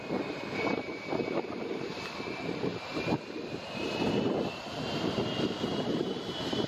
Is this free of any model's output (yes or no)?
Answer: no